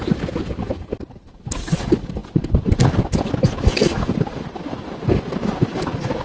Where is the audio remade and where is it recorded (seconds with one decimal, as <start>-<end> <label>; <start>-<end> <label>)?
0.0-6.2 recorded